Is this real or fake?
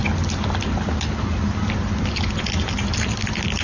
real